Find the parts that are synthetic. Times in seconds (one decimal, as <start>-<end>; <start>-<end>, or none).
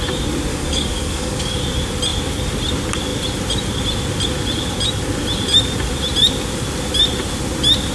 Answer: 0.5-1.6